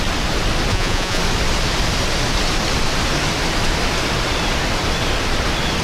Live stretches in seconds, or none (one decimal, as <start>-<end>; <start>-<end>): 0.0-0.7; 1.2-5.8